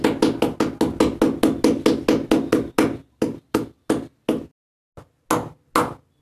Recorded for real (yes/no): yes